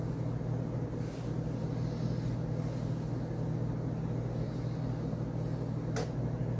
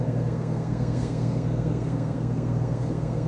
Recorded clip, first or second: first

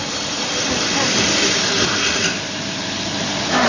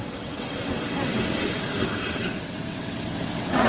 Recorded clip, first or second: first